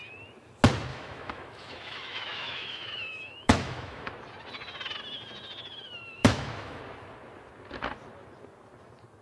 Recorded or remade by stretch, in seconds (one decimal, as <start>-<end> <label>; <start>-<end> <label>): 0.0-0.9 recorded; 0.9-4.1 remade; 4.1-6.2 recorded; 6.2-6.8 remade; 6.8-9.2 recorded